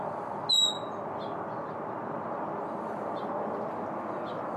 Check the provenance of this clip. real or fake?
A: real